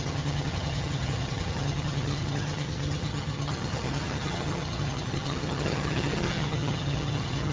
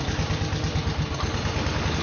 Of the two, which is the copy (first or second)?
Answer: first